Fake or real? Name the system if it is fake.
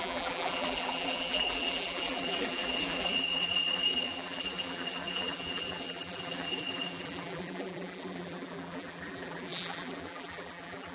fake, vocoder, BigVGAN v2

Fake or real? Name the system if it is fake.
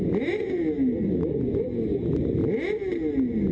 real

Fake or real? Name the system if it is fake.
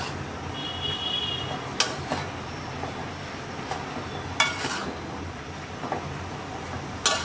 real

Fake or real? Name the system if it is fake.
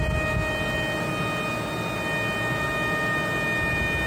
real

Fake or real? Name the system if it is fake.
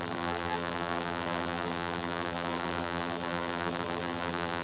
fake, vocoder, BigVGAN v2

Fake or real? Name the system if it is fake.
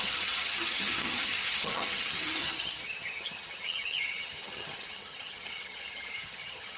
fake, vocoder, HiFi-GAN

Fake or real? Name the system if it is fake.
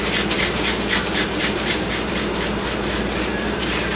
fake, vocoder, BigVGAN v2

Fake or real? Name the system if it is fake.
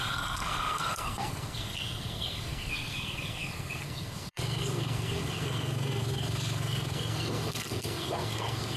fake, codec, SNAC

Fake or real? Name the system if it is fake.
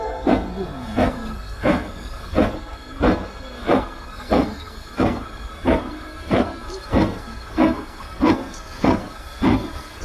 fake, codec, SNAC